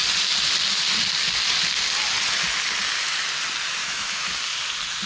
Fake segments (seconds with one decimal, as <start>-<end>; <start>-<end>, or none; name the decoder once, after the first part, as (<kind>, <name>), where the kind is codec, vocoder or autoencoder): 3.8-4.3 (autoencoder, DAC-VAE)